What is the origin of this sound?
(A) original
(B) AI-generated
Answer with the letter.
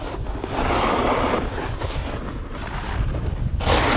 A